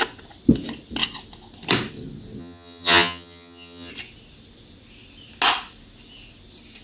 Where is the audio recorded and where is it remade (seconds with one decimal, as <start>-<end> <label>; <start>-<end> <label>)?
0.0-2.4 recorded; 2.4-3.9 remade; 3.9-6.8 recorded